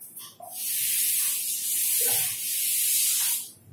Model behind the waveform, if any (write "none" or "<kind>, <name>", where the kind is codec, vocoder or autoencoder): none